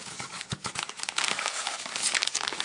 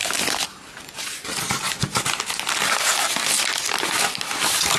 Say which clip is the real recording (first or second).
second